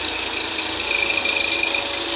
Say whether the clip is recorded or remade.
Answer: recorded